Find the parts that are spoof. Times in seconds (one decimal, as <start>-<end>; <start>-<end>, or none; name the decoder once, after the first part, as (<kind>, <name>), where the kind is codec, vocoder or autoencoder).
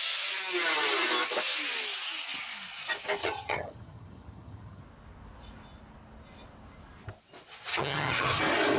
3.2-4.8 (vocoder, HiFi-GAN); 7.7-8.4